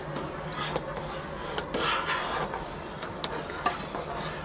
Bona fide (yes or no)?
yes